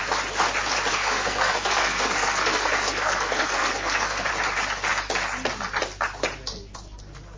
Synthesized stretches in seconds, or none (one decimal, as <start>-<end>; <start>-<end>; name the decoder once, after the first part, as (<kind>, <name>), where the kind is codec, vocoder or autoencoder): 0.9-4.3 (codec, SNAC)

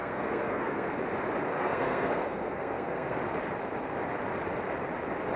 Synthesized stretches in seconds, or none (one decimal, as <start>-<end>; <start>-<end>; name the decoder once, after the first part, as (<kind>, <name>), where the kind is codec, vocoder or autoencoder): 0.0-0.9 (codec, SNAC); 1.5-3.2

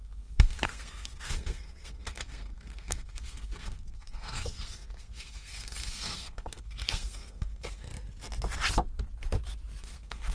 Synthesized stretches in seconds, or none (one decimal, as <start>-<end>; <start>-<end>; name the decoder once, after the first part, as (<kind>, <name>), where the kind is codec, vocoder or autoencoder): 0.0-7.9 (codec, SNAC); 9.8-10.3

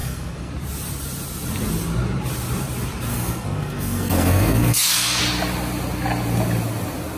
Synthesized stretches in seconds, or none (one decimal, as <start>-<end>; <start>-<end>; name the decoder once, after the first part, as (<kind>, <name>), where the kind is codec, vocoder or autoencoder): 0.0-0.5 (codec, SNAC); 3.1-5.2